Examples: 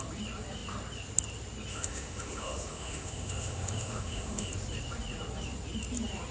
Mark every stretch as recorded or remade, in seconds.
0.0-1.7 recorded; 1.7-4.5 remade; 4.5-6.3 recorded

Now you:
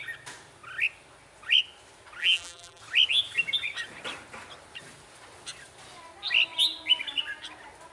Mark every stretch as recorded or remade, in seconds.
0.0-2.2 recorded; 2.2-2.8 remade; 2.8-7.9 recorded

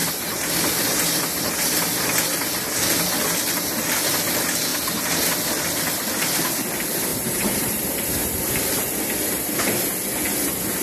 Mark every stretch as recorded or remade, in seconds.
0.0-0.5 remade; 0.5-7.1 recorded; 7.1-9.0 remade; 9.0-10.8 recorded

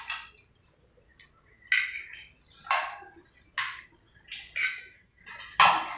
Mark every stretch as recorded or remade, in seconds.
0.0-4.7 recorded; 4.7-5.2 remade; 5.2-6.0 recorded

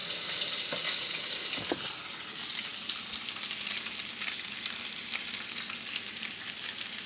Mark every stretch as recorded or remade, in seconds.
0.0-7.1 recorded